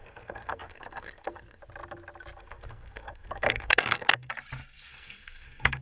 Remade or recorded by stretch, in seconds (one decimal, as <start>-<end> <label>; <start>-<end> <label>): 0.0-1.6 remade; 1.6-2.4 recorded; 2.4-4.3 remade; 4.3-4.9 recorded; 4.9-5.8 remade